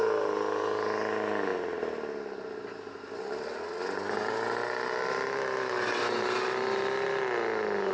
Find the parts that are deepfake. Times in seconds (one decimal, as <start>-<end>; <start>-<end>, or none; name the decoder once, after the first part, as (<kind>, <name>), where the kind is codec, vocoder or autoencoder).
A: none